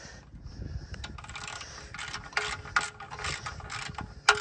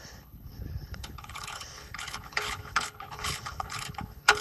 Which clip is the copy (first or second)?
second